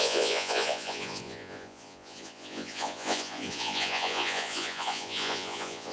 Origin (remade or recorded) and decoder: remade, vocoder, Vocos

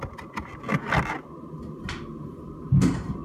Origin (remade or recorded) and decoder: recorded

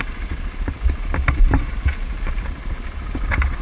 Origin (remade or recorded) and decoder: recorded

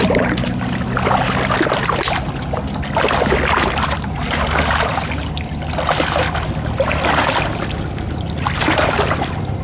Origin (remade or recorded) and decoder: recorded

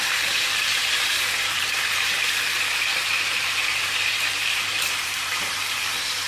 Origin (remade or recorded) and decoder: remade, vocoder, BigVGAN v2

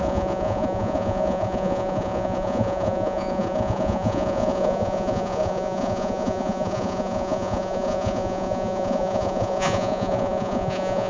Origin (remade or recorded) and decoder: remade, vocoder, Vocos